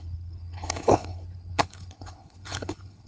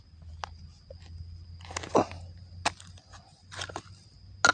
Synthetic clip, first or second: first